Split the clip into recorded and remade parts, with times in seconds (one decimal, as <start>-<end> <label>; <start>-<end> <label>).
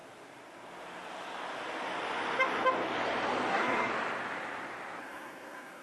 0.0-3.5 recorded; 3.5-3.9 remade; 3.9-5.0 recorded; 5.0-5.8 remade